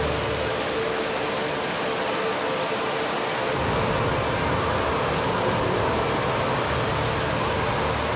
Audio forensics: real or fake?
real